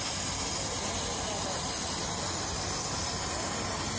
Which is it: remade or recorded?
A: recorded